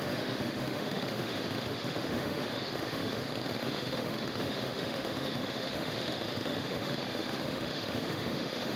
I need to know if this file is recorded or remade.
remade